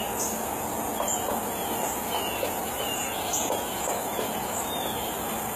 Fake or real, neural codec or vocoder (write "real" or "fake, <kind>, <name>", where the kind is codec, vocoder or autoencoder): real